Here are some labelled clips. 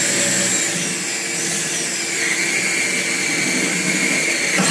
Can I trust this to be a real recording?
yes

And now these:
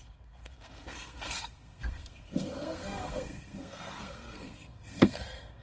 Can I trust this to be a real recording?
no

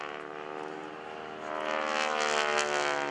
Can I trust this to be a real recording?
yes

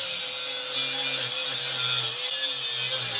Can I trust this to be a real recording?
yes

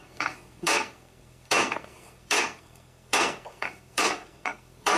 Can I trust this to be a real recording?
no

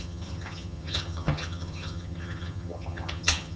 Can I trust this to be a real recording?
no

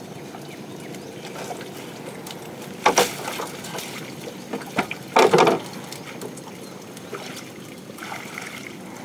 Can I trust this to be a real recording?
yes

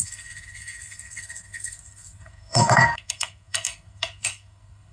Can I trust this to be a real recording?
no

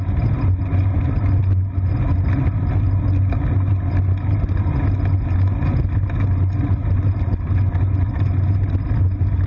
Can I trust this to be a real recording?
yes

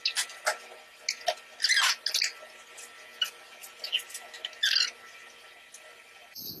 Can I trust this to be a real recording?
yes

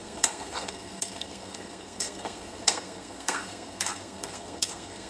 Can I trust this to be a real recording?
no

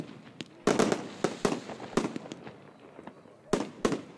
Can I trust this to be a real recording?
yes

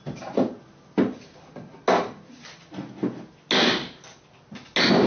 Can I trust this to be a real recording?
yes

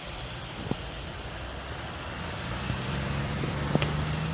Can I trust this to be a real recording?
no